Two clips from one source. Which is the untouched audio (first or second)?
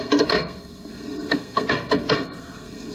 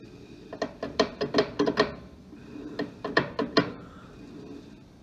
second